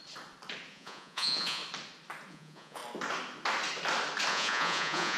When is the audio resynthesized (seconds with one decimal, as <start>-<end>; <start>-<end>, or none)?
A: 0.7-1.6; 2.3-2.8; 4.3-5.2